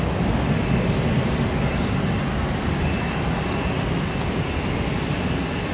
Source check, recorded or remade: recorded